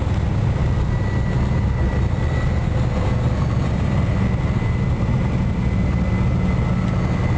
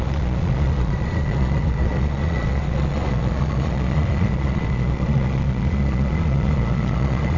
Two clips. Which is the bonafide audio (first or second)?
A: first